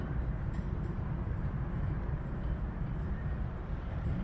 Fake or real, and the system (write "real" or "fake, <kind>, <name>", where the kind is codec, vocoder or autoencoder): fake, vocoder, BigVGAN v2